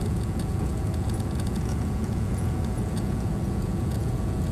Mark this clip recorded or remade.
remade